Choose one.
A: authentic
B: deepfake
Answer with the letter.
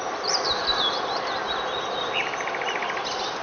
A